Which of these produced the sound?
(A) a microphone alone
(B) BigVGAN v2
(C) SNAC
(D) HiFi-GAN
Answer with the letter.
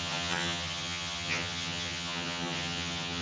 D